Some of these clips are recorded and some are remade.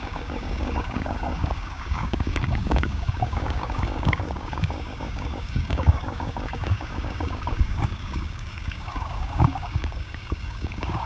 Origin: remade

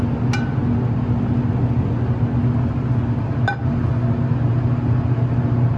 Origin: recorded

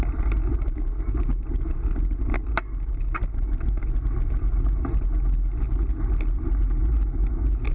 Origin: recorded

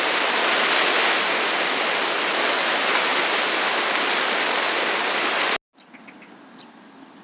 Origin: recorded